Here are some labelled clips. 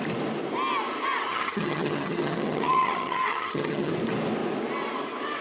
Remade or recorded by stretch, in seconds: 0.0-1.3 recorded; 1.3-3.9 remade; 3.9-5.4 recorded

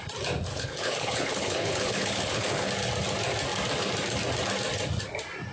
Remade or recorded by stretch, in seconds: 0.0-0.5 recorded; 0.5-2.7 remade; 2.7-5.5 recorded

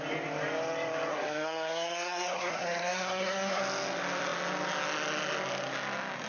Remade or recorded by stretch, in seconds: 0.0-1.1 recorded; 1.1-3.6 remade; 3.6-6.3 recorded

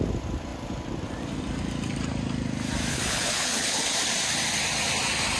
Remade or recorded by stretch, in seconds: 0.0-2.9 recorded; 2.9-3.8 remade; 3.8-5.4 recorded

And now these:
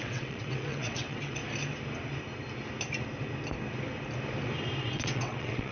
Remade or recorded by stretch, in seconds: 0.0-1.4 remade; 1.4-4.8 recorded; 4.8-5.7 remade

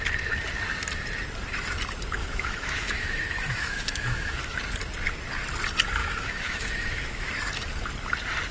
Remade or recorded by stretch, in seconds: 0.0-2.2 recorded; 2.2-4.6 remade; 4.6-6.0 recorded; 6.0-7.3 remade; 7.3-8.5 recorded

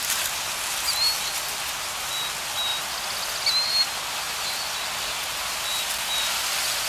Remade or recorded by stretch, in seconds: 0.0-6.9 recorded